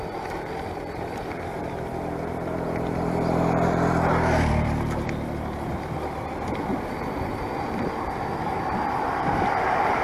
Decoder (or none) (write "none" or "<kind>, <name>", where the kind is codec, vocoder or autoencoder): vocoder, BigVGAN v2